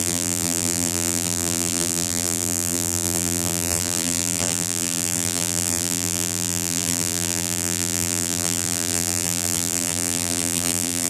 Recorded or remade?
remade